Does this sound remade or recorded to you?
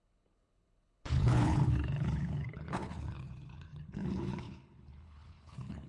remade